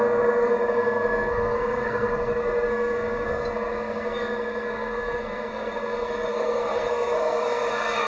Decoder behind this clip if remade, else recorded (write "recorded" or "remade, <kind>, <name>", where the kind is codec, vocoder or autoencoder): remade, codec, SNAC